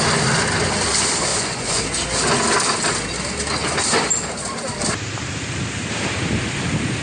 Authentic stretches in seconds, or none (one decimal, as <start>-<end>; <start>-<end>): 0.0-1.3; 1.8-7.0